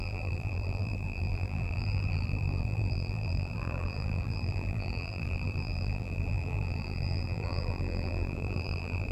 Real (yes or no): no